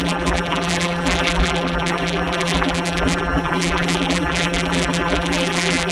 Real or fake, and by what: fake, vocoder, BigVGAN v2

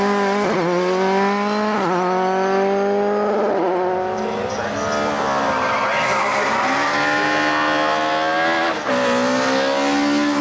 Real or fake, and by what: real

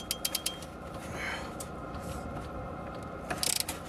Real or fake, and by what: real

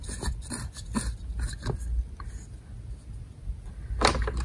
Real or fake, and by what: real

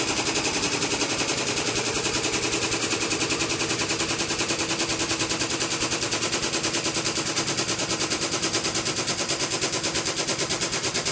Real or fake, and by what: fake, vocoder, BigVGAN v2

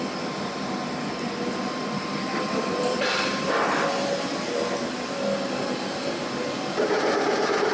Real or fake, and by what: real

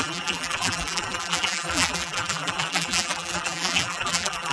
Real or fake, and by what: fake, vocoder, BigVGAN v2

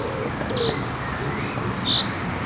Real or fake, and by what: real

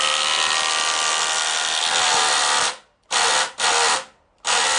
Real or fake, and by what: real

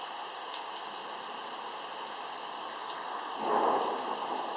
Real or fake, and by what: real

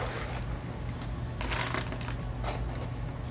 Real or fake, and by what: real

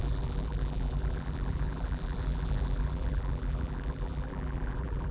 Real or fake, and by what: fake, vocoder, BigVGAN v2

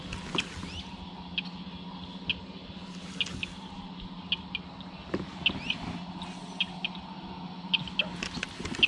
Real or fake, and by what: real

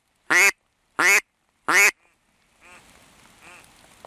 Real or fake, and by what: real